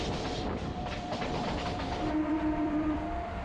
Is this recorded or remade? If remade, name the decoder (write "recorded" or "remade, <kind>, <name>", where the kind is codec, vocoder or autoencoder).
remade, vocoder, BigVGAN v2